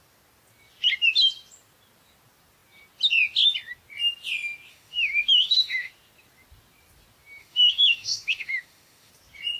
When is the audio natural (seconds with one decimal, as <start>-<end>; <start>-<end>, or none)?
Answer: 0.0-4.7; 5.9-7.4; 9.1-9.6